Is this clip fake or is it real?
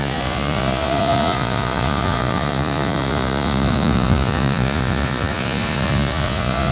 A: fake